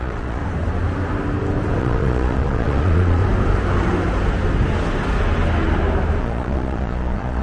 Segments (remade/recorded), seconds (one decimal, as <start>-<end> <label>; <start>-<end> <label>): 0.0-0.4 remade; 0.4-1.8 recorded; 1.8-3.2 remade; 3.2-6.2 recorded; 6.2-7.4 remade